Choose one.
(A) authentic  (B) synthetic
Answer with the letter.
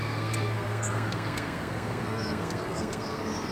B